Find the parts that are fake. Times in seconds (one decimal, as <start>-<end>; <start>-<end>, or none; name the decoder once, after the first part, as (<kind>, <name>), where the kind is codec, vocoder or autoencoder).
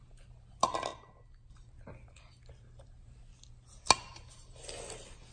none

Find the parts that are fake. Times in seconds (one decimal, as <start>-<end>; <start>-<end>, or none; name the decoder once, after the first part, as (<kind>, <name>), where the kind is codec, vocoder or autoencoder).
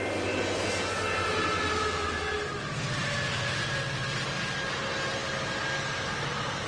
none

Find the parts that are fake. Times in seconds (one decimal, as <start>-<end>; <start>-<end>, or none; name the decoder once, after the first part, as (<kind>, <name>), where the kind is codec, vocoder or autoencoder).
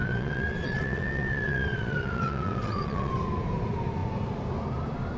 0.0-3.1 (vocoder, WaveNeXt)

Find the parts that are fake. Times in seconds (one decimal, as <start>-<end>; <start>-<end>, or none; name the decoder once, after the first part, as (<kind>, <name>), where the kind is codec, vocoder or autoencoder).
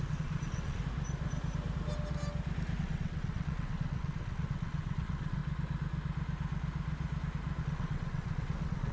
0.0-0.8 (vocoder, WaveNeXt); 2.8-5.4; 7.6-8.9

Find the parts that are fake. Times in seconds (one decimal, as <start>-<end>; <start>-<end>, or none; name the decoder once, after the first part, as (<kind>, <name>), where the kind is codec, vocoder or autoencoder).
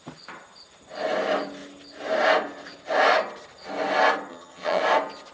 4.3-4.8 (vocoder, HiFi-GAN)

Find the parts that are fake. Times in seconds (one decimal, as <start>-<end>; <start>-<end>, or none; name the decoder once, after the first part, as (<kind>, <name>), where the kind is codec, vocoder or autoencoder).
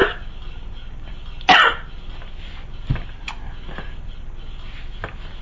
none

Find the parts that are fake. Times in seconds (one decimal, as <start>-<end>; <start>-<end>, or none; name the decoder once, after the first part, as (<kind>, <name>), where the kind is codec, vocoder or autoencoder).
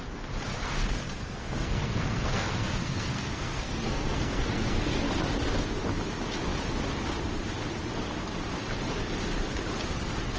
0.5-5.1 (codec, SNAC)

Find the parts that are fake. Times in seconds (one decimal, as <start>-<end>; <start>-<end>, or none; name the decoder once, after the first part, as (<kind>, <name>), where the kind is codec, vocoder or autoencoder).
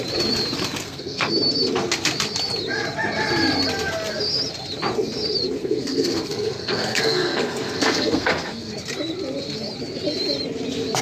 0.8-1.3 (codec, SNAC); 5.6-8.7